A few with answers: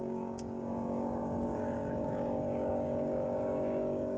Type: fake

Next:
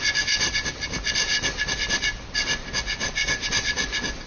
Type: real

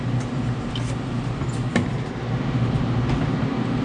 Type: real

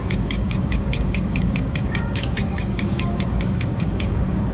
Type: fake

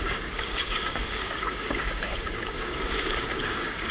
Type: fake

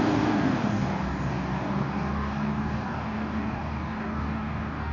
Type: fake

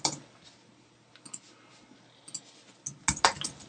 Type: real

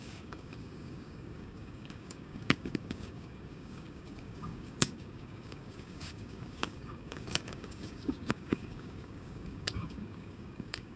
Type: fake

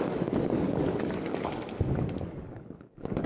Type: fake